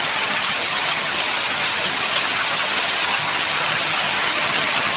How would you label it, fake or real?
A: fake